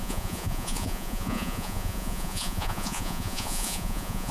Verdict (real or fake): fake